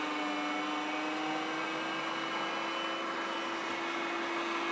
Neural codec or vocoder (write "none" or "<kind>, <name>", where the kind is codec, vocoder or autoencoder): none